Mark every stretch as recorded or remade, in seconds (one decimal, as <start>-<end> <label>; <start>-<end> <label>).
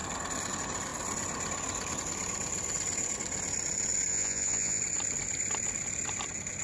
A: 0.0-4.1 recorded; 4.1-4.8 remade; 4.8-6.6 recorded